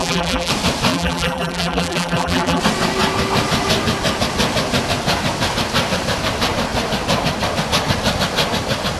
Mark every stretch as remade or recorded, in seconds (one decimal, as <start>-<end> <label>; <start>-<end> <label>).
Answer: 0.0-0.5 remade; 0.5-0.9 recorded; 0.9-2.6 remade; 2.6-9.0 recorded

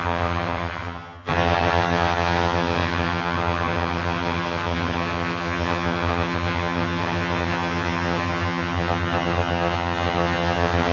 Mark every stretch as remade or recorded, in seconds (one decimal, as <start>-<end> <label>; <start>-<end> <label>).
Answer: 0.0-10.9 remade

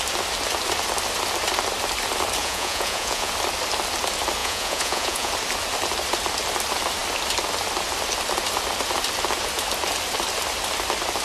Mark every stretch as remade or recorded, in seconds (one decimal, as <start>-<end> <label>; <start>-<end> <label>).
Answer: 0.0-2.4 recorded; 2.4-3.3 remade; 3.3-4.4 recorded; 4.4-5.3 remade; 5.3-11.2 recorded

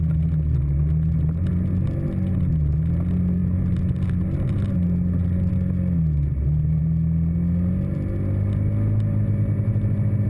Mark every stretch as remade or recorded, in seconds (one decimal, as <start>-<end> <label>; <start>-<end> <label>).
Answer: 0.0-10.3 recorded

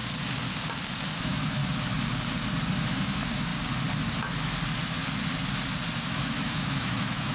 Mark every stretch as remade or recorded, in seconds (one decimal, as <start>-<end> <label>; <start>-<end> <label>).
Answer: 0.0-1.2 recorded; 1.2-1.6 remade; 1.6-2.9 recorded; 2.9-3.5 remade; 3.5-6.0 recorded; 6.0-7.3 remade

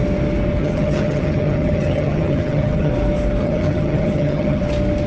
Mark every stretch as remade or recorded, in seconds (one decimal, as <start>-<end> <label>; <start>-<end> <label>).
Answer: 0.0-0.6 recorded; 0.6-2.9 remade; 2.9-3.4 recorded; 3.4-4.6 remade; 4.6-5.1 recorded